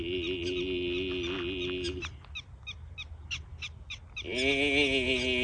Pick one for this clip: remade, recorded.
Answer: recorded